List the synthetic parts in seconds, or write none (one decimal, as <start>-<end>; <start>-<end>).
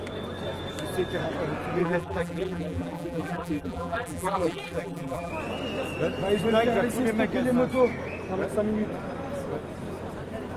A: 1.8-5.3